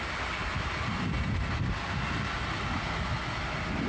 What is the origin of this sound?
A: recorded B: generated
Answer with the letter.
A